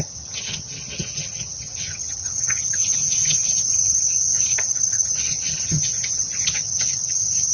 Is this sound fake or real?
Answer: fake